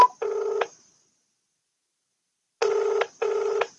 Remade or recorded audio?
recorded